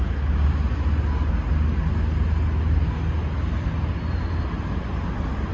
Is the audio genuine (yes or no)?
yes